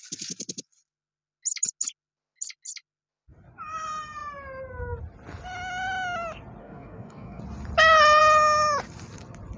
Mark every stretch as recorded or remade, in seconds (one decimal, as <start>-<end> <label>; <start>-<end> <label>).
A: 0.0-6.6 recorded; 6.6-7.4 remade; 7.4-9.6 recorded